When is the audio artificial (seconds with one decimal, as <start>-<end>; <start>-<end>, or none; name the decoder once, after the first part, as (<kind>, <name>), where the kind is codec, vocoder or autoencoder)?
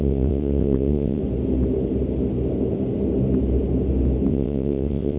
0.0-1.2 (vocoder, WaveNeXt); 4.3-5.2